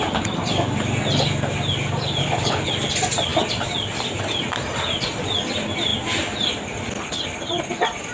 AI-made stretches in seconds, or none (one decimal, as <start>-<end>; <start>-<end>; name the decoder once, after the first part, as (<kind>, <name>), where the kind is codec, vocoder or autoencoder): 2.2-2.7 (codec, HILCodec)